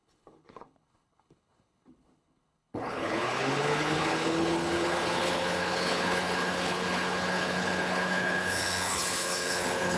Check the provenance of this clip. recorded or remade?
remade